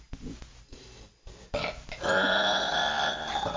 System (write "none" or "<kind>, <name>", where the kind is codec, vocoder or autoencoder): none